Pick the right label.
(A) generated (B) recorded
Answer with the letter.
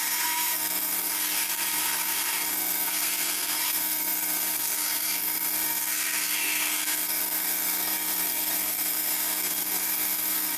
A